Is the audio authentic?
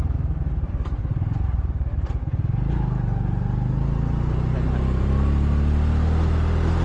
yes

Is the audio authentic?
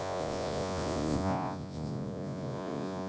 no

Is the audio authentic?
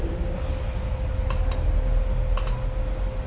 yes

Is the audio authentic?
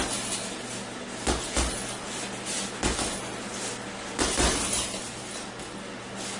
yes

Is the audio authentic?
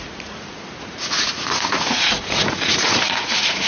no